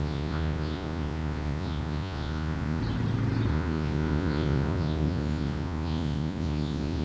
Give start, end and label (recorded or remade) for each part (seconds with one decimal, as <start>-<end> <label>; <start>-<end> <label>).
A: 0.0-2.8 remade; 2.8-3.5 recorded; 3.5-7.0 remade